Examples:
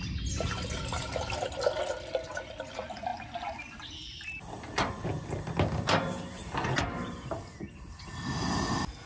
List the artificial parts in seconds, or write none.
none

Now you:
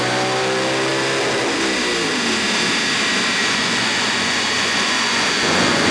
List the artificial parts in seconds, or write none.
3.4-5.9 (vocoder, Vocos)

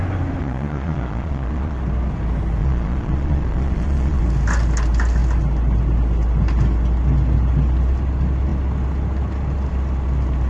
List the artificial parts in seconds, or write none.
0.4-1.8 (vocoder, Vocos); 2.6-4.2

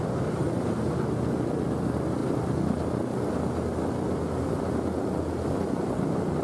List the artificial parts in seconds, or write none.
none

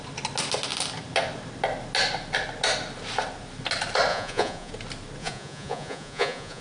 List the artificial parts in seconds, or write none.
4.1-4.7 (vocoder, Vocos); 5.2-6.6